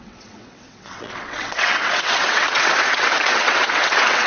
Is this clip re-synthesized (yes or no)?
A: yes